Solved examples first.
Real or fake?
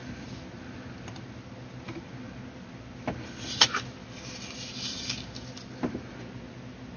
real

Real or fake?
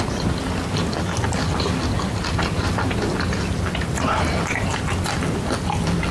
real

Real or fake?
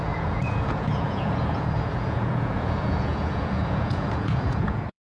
fake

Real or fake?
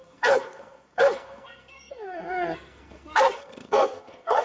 fake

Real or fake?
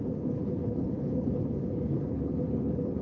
fake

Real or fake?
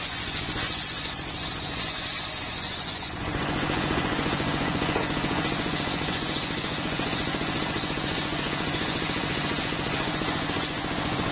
fake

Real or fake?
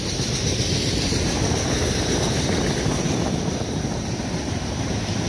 real